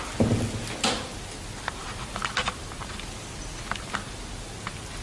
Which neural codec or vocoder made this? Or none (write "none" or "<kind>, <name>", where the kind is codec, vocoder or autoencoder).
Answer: none